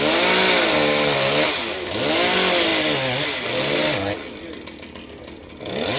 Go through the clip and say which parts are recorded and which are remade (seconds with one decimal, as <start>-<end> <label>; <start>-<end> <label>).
0.0-6.0 recorded